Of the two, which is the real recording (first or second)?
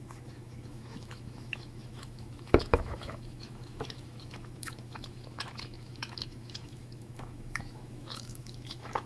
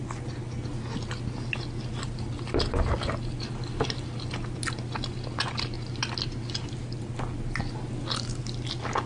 second